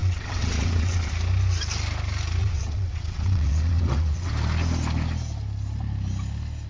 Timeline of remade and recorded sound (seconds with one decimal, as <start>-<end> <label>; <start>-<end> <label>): 0.0-1.1 remade; 1.1-2.4 recorded; 2.4-4.3 remade; 4.3-6.7 recorded